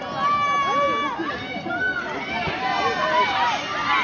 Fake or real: real